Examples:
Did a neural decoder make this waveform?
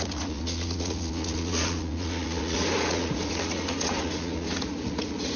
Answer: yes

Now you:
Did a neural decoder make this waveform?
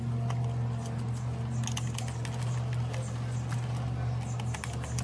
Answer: no